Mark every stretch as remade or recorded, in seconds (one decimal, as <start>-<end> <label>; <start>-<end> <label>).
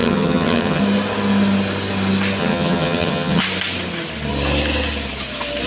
0.0-0.8 remade; 0.8-2.4 recorded; 2.4-3.4 remade; 3.4-5.7 recorded